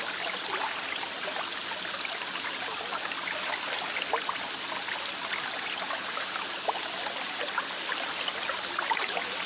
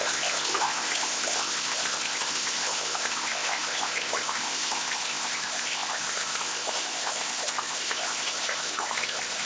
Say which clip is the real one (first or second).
first